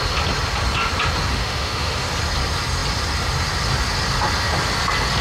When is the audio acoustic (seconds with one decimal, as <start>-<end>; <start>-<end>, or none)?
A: 0.0-1.3; 2.1-5.2